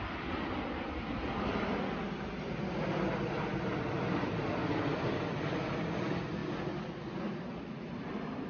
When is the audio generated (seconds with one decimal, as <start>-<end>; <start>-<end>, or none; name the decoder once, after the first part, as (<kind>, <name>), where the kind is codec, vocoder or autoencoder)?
none